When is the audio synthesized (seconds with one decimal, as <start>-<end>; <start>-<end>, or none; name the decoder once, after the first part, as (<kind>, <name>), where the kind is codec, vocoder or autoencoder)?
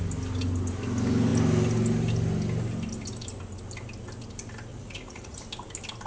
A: 4.7-5.4 (vocoder, Vocos)